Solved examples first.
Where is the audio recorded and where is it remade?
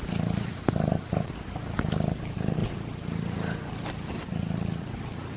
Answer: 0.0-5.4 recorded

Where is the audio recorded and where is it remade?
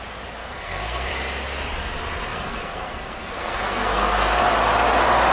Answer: 0.0-0.4 recorded; 0.4-1.1 remade; 1.1-2.3 recorded; 2.3-4.4 remade; 4.4-5.3 recorded